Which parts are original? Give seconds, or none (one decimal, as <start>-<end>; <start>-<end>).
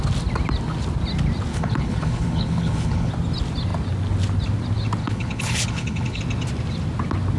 0.0-1.5; 3.1-5.0; 6.2-7.4